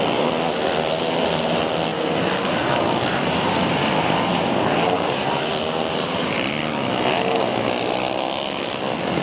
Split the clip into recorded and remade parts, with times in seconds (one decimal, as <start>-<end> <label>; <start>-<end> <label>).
0.0-3.1 recorded; 3.1-6.5 remade; 6.5-9.2 recorded